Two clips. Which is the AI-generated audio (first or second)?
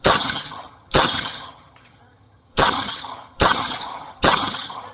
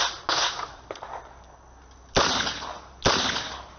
first